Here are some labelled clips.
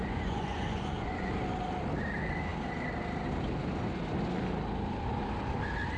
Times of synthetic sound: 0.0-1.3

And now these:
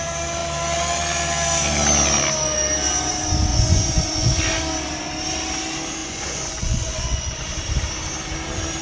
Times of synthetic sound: 3.5-4.3; 6.0-7.4

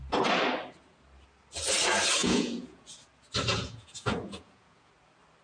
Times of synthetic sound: 2.2-2.9; 3.5-4.9